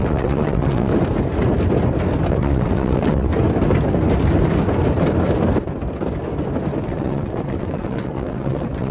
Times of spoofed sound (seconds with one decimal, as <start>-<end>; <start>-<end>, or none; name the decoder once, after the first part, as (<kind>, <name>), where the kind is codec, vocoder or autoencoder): 0.0-0.9 (vocoder, WaveNeXt); 2.3-3.3; 6.8-8.9